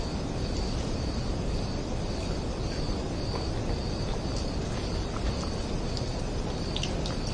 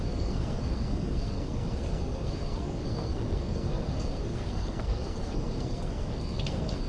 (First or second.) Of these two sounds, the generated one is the second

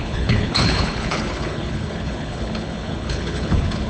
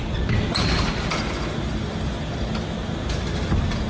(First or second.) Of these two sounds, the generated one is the first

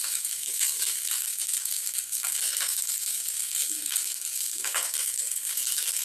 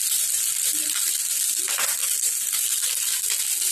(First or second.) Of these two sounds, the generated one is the first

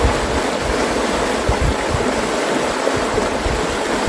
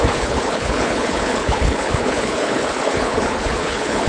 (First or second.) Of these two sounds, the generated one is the second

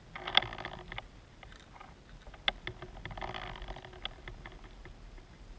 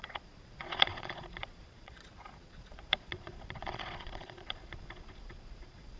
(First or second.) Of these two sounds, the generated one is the second